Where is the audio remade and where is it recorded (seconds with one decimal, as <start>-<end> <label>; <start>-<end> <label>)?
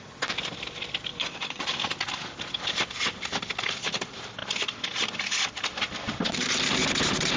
0.0-1.1 recorded; 1.1-1.6 remade; 1.6-7.4 recorded